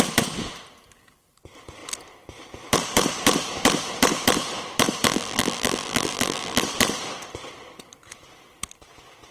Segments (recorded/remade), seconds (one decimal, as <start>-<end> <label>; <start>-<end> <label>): 0.0-5.1 recorded; 5.1-6.6 remade; 6.6-9.3 recorded